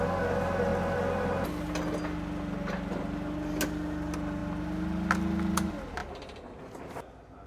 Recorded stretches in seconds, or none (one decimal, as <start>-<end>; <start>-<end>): 0.0-7.5